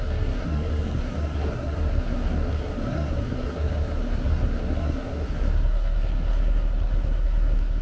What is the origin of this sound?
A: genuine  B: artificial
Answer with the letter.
B